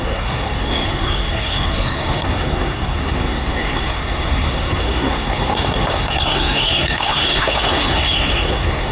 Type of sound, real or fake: fake